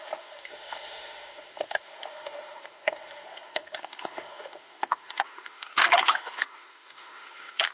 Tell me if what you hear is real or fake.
fake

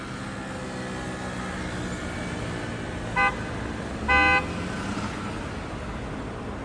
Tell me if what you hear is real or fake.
real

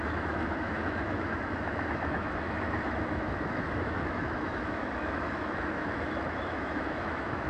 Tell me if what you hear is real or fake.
fake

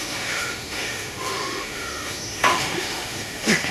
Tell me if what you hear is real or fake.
fake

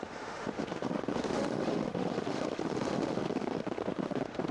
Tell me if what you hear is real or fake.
fake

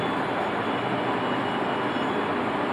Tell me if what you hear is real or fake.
real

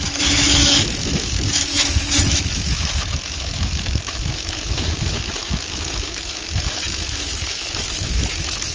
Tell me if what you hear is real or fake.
fake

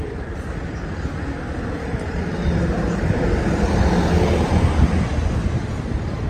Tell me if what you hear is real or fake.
real